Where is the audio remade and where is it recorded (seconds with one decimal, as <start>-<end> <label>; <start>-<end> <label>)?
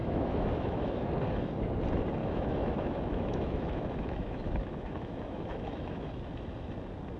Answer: 0.0-1.1 remade; 1.1-2.2 recorded; 2.2-6.1 remade; 6.1-7.2 recorded